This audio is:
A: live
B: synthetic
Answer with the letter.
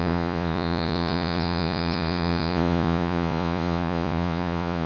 B